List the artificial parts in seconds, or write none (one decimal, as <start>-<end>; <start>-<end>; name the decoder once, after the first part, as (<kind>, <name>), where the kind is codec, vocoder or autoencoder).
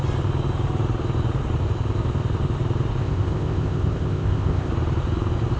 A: 3.0-4.7 (codec, ZipCodec)